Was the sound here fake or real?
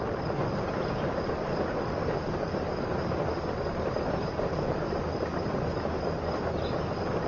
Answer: real